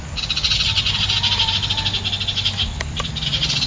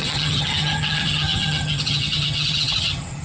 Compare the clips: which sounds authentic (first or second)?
first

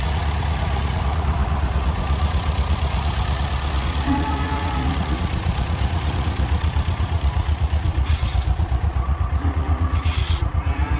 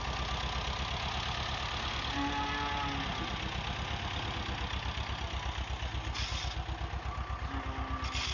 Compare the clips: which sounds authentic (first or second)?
second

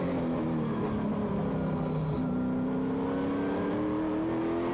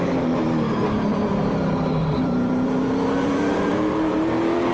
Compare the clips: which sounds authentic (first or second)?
first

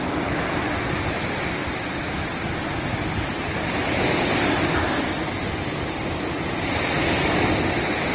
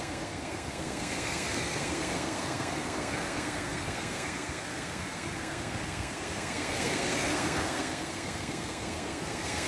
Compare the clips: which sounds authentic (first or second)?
first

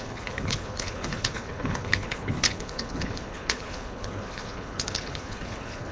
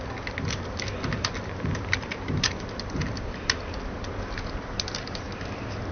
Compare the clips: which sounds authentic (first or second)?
second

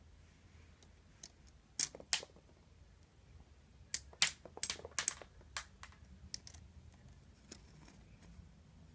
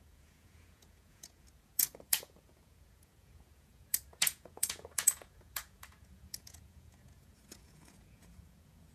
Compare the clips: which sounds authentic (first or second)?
first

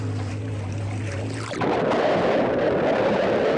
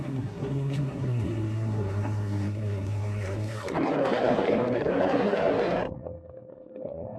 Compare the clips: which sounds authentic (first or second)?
first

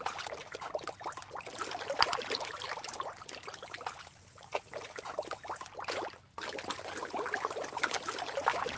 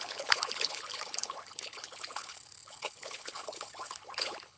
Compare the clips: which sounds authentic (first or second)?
first